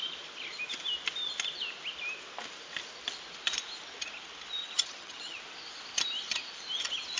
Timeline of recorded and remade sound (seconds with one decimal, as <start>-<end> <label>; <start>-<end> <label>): 0.0-4.6 recorded; 4.6-5.4 remade; 5.4-7.2 recorded